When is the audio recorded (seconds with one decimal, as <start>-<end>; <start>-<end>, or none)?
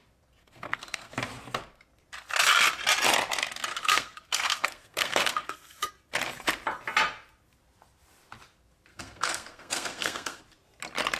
0.0-0.4; 1.1-3.7; 5.9-8.9; 10.4-11.2